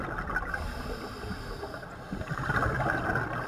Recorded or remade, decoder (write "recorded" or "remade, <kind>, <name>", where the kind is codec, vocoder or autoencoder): recorded